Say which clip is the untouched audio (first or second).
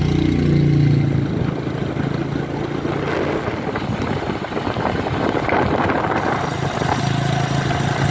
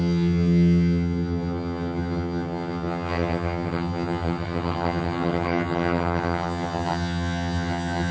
first